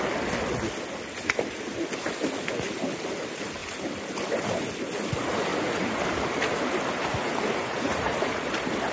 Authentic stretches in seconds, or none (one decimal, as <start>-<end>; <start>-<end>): 0.0-5.5; 6.0-7.1; 8.5-8.9